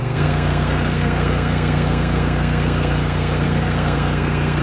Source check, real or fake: fake